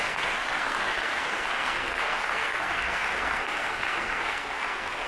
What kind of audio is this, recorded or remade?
remade